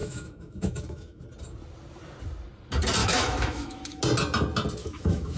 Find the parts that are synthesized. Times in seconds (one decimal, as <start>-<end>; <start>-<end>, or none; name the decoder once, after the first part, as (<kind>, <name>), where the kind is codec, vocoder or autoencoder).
0.0-1.2 (autoencoder, DAC-VAE); 3.0-4.0; 4.8-5.4